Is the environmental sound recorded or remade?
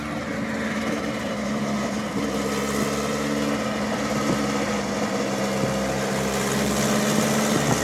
recorded